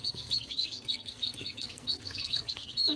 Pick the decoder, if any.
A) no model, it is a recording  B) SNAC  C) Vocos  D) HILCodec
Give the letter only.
B